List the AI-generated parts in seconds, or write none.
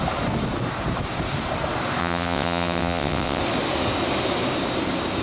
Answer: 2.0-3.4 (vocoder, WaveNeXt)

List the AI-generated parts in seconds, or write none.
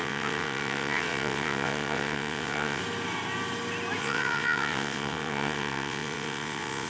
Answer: 0.0-2.8 (vocoder, WaveNeXt); 4.0-6.9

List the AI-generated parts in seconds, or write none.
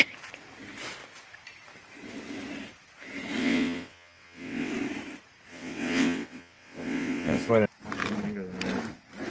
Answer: 3.4-4.7 (vocoder, WaveNeXt); 5.5-7.5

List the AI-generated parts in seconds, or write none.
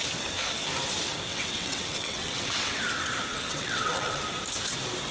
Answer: 1.3-2.8 (vocoder, WaveNeXt); 3.3-4.2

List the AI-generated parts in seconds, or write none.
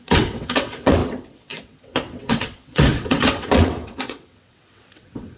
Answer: 0.0-5.4 (vocoder, WaveNeXt)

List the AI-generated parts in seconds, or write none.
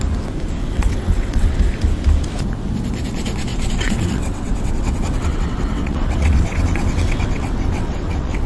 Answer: 0.6-1.6 (vocoder, WaveNeXt); 3.5-8.5